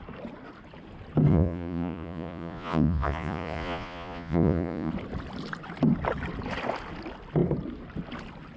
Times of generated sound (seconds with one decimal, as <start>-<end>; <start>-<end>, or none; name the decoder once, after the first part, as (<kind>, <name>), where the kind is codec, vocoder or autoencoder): 1.3-4.9 (vocoder, Vocos)